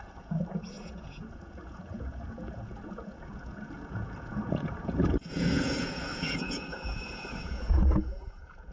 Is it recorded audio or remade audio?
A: remade